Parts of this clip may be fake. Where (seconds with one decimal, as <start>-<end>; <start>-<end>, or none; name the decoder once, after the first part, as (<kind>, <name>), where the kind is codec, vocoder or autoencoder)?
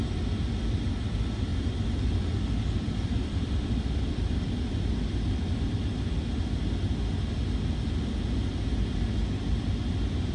1.5-5.7 (vocoder, BigVGAN v2)